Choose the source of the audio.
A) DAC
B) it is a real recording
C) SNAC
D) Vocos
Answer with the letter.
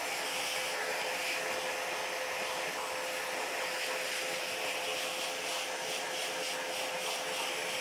B